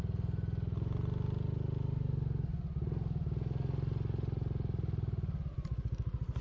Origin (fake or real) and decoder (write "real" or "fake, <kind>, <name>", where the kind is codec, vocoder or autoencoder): real